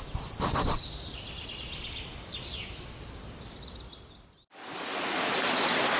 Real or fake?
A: real